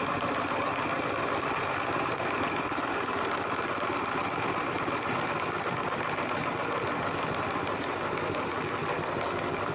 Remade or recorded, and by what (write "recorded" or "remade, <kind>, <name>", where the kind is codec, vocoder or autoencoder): recorded